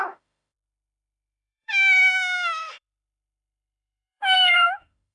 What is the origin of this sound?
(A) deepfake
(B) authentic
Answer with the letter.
A